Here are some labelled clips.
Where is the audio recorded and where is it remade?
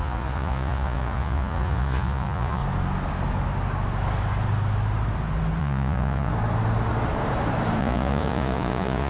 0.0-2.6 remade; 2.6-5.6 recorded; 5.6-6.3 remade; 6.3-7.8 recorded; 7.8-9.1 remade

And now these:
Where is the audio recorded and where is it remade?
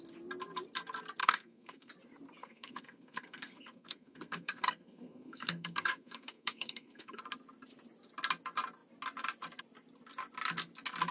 0.0-1.2 recorded; 1.2-1.9 remade; 1.9-2.4 recorded; 2.4-7.2 remade; 7.2-11.1 recorded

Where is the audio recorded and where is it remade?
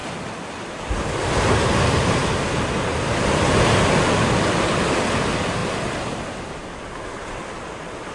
0.0-8.1 recorded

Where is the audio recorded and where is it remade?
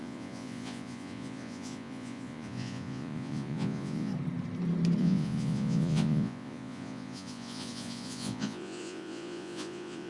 0.0-4.1 remade; 4.1-5.0 recorded; 5.0-10.1 remade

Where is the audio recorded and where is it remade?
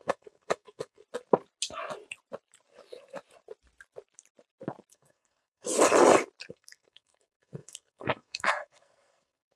0.0-1.0 remade; 1.0-4.9 recorded; 4.9-5.7 remade; 5.7-6.5 recorded; 6.5-9.6 remade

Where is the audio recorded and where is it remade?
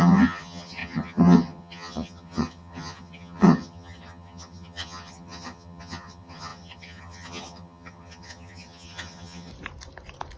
0.0-9.5 remade; 9.5-10.4 recorded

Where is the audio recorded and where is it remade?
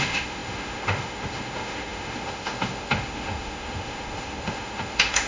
0.0-5.3 remade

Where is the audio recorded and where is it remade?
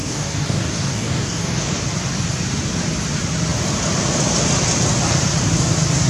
0.0-1.8 remade; 1.8-6.1 recorded